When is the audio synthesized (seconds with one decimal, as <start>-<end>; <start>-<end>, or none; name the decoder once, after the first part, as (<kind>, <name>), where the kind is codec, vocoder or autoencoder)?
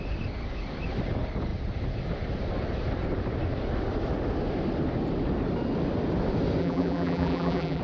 6.6-7.8 (vocoder, BigVGAN v2)